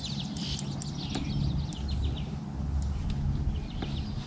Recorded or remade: recorded